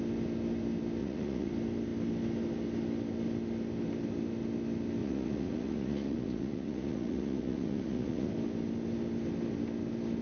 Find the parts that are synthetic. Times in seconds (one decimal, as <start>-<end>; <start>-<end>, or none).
1.0-1.5; 5.0-8.3